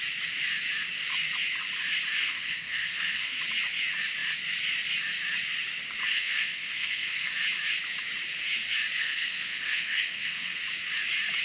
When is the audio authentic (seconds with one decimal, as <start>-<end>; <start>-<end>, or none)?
0.0-2.2; 3.4-6.1; 7.3-9.0; 10.6-11.4